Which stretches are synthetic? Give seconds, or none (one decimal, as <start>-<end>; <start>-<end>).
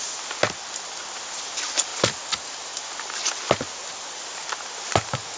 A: none